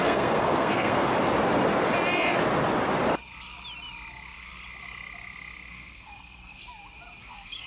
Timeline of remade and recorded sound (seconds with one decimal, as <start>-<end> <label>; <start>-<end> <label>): 0.0-1.1 remade; 1.1-5.7 recorded; 5.7-6.6 remade; 6.6-7.2 recorded; 7.2-7.7 remade